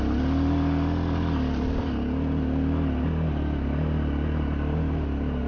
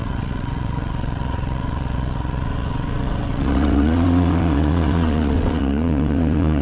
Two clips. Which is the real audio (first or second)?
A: first